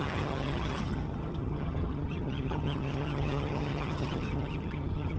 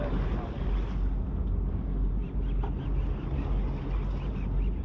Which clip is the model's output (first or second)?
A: first